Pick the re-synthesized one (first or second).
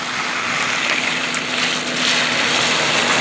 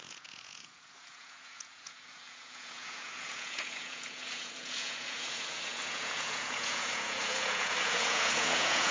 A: second